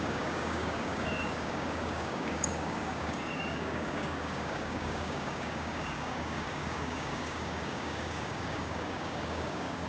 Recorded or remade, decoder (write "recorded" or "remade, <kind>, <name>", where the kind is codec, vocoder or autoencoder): remade, codec, DAC